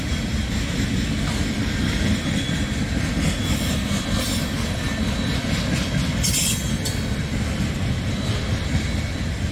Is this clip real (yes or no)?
yes